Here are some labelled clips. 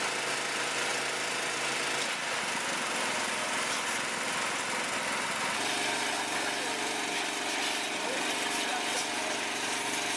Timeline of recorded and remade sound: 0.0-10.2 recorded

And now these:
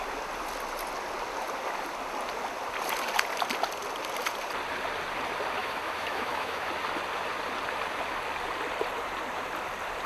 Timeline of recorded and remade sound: 0.0-5.6 recorded; 5.6-6.7 remade; 6.7-10.1 recorded